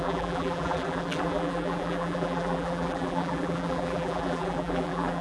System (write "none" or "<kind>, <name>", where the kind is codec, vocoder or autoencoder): vocoder, BigVGAN v2